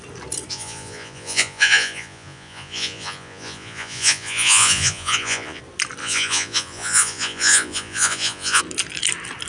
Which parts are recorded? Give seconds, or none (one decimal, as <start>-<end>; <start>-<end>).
0.0-0.5; 5.6-6.0; 8.6-9.5